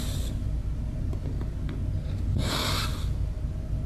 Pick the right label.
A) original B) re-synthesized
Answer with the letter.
A